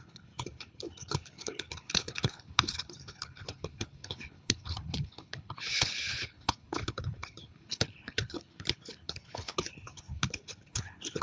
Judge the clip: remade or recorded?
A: remade